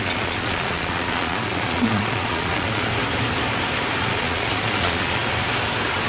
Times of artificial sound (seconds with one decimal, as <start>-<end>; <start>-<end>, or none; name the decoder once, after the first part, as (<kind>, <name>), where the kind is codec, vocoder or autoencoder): 0.0-2.9 (vocoder, Vocos); 4.0-5.2